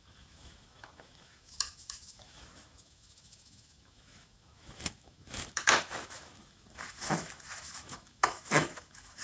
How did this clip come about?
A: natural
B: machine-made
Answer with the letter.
B